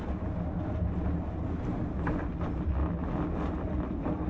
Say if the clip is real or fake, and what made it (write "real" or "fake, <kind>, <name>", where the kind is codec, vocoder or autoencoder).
real